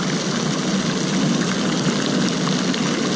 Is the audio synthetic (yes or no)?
no